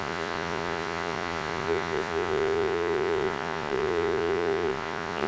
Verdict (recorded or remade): remade